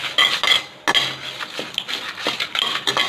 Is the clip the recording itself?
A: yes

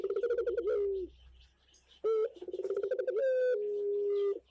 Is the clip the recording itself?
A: yes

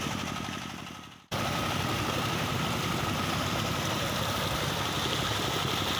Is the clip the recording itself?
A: yes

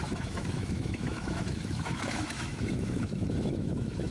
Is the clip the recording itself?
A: no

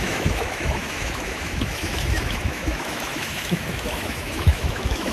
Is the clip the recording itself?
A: no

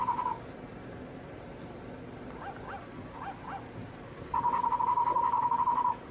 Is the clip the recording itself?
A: yes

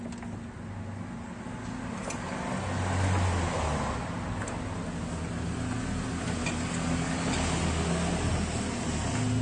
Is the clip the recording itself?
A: yes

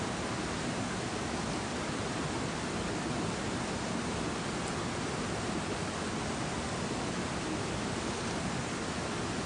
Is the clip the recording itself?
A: yes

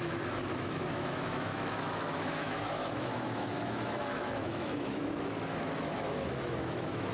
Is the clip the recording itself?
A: no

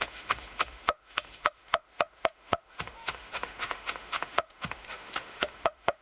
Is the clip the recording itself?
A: no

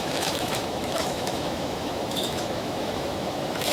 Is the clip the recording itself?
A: no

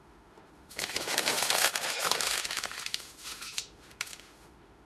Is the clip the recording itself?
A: no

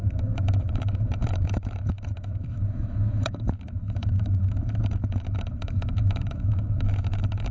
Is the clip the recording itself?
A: no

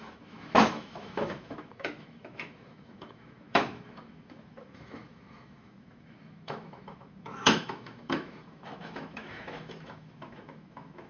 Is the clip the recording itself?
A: no